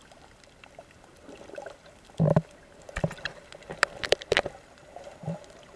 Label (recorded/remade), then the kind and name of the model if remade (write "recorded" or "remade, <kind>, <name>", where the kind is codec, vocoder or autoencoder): remade, vocoder, BigVGAN v2